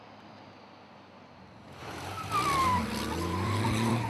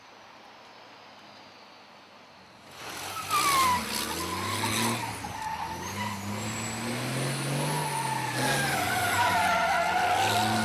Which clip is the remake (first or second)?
first